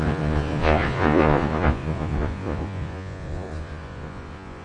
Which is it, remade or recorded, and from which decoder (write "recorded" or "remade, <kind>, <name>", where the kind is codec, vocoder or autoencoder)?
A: remade, vocoder, Vocos